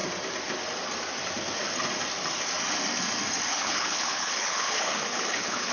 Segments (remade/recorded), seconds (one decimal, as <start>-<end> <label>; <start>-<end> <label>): 0.0-3.5 recorded; 3.5-5.7 remade